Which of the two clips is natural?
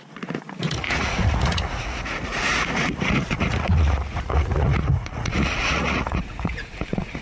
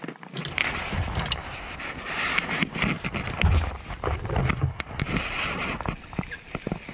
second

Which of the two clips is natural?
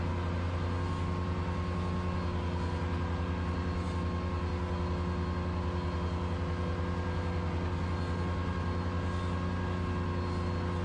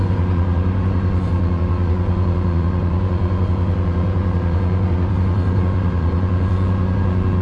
first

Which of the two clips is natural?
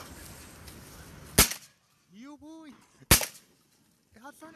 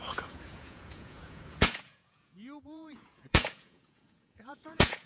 first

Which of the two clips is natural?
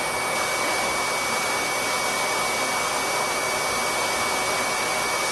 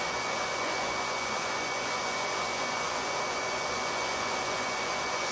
first